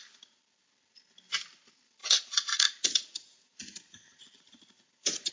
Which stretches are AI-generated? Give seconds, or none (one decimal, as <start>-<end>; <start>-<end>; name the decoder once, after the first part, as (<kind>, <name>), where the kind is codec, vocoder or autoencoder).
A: 2.0-5.3 (vocoder, Vocos)